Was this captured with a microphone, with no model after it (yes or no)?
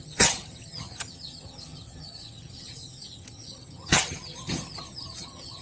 no